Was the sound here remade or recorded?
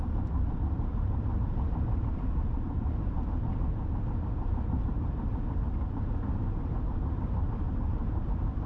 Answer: remade